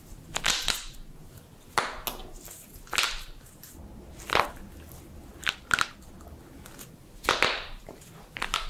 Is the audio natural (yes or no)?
yes